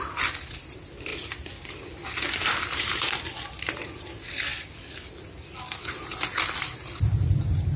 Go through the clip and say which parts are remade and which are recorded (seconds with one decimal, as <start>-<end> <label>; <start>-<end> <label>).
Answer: 0.0-7.8 recorded